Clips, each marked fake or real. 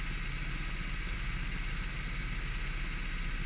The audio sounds real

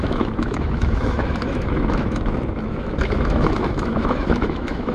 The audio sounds fake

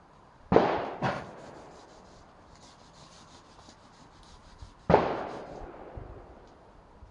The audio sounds fake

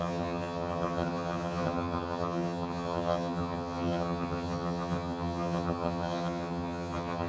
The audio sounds fake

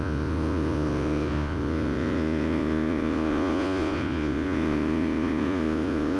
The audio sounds fake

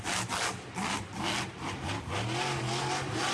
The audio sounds real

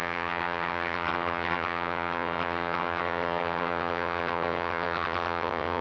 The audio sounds fake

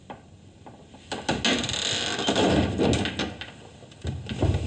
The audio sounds real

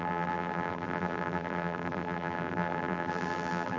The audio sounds fake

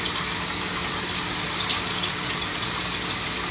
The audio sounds real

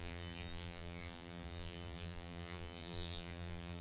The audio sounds fake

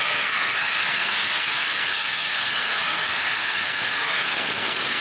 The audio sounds fake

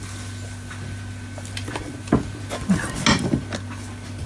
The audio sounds real